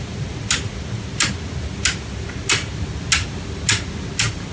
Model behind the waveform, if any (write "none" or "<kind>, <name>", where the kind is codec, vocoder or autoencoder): none